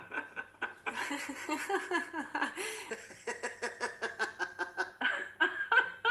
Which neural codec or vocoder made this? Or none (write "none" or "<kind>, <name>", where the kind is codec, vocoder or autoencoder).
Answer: none